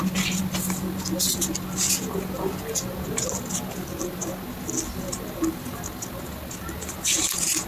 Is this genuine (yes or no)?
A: yes